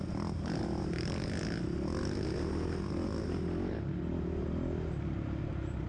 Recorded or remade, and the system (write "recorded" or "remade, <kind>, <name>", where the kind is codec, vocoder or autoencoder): recorded